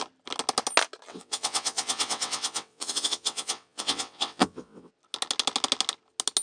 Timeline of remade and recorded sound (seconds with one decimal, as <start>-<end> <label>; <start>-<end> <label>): 0.0-1.1 recorded; 1.1-4.9 remade; 4.9-6.4 recorded